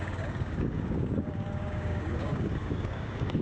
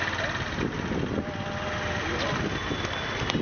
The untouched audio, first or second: second